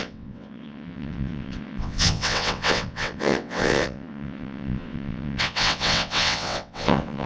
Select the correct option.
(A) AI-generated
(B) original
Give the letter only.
A